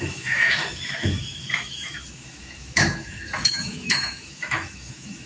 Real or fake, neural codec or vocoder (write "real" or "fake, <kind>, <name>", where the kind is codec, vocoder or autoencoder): fake, autoencoder, DAC-VAE